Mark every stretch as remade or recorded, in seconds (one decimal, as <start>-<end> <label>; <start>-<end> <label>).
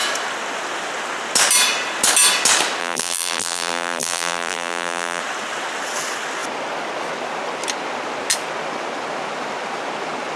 0.0-2.8 recorded; 2.8-5.2 remade; 5.2-10.4 recorded